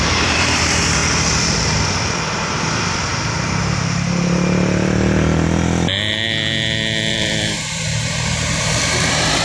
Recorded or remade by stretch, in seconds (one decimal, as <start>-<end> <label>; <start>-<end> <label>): 0.0-1.0 remade; 1.0-1.5 recorded; 1.5-3.1 remade; 3.1-7.1 recorded; 7.1-9.4 remade